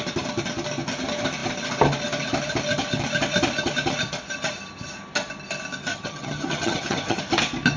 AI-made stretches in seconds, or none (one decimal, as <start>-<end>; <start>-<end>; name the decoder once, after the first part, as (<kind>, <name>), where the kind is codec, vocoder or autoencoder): 5.9-7.2 (vocoder, HiFi-GAN)